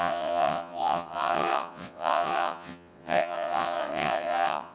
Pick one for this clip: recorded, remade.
remade